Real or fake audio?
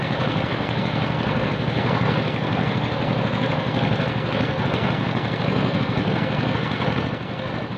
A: fake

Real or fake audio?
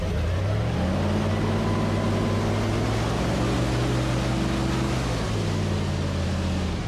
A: real